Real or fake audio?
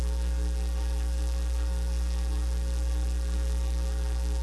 fake